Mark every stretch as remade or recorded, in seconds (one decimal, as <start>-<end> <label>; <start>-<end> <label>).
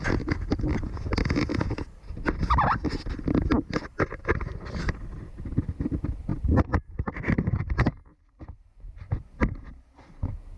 0.0-1.5 recorded; 1.5-2.9 remade; 2.9-6.3 recorded; 6.3-9.3 remade; 9.3-10.6 recorded